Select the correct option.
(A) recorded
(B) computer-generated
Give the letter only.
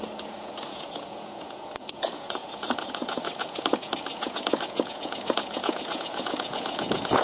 B